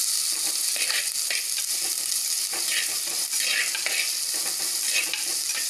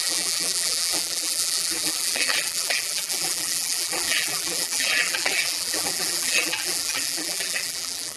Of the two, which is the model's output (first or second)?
second